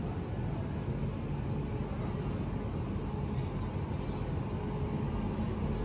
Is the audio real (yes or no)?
yes